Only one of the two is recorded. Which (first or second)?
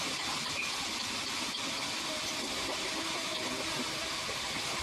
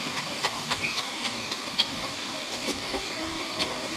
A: first